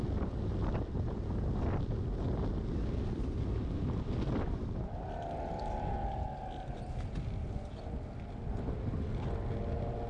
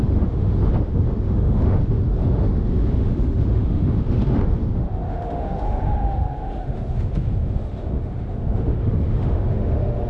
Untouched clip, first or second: first